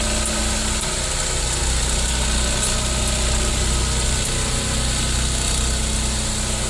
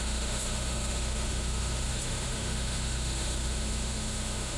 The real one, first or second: first